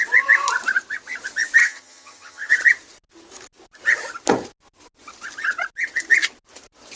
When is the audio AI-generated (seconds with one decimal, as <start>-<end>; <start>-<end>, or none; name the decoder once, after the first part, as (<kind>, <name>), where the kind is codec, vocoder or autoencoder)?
1.6-2.5 (vocoder, HiFi-GAN)